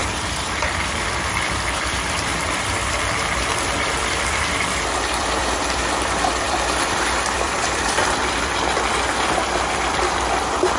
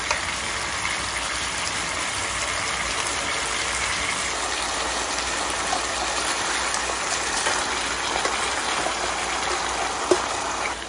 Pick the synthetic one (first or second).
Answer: first